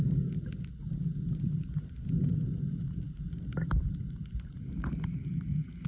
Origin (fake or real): real